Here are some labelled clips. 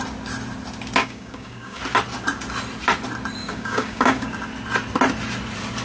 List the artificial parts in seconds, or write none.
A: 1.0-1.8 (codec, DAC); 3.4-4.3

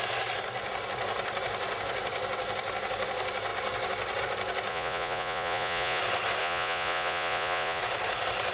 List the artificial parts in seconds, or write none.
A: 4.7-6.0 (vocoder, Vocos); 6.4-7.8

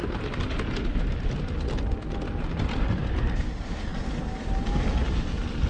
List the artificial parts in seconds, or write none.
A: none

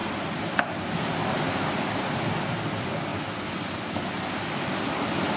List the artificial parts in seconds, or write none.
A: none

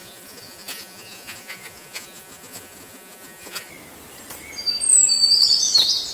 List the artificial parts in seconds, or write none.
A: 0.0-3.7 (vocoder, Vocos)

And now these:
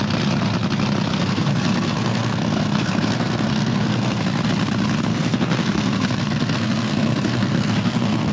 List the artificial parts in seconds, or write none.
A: 1.1-4.2 (codec, SNAC); 5.1-8.3

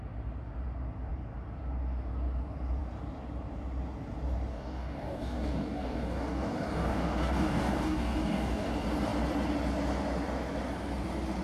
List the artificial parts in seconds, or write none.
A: 4.5-8.7 (codec, DAC)